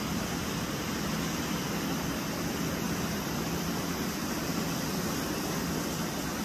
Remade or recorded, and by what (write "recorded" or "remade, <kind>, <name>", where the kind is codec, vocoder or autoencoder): remade, vocoder, BigVGAN v2